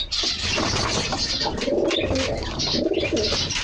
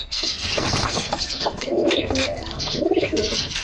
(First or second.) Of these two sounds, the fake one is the second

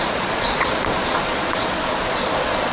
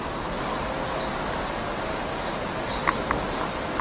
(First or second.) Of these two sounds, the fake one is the first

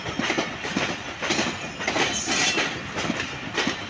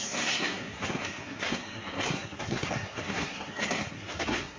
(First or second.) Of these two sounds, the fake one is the second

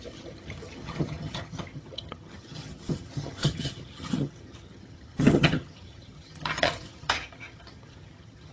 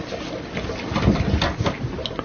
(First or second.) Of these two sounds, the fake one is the first